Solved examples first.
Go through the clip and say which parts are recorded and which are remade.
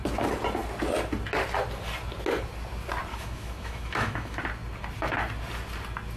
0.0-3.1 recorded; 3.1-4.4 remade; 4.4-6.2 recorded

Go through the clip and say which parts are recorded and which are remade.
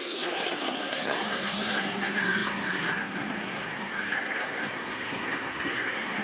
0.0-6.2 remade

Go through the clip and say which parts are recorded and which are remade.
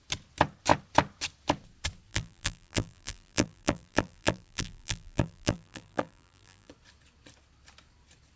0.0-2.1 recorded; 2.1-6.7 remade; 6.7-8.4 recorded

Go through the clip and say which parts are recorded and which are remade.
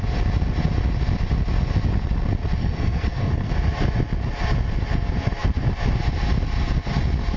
0.0-2.6 recorded; 2.6-3.5 remade; 3.5-7.4 recorded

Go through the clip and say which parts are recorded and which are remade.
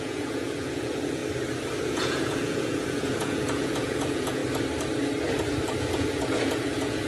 0.0-1.2 remade; 1.2-1.9 recorded; 1.9-4.4 remade; 4.4-5.8 recorded; 5.8-7.1 remade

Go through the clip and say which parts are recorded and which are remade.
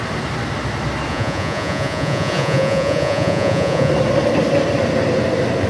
0.0-1.1 recorded; 1.1-3.9 remade; 3.9-5.7 recorded